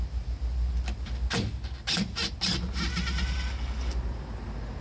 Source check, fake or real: real